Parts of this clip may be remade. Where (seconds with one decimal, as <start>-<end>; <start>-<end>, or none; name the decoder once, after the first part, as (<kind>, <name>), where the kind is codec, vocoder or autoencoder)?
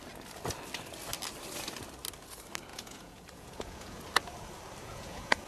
2.7-4.0 (vocoder, Vocos); 4.8-5.5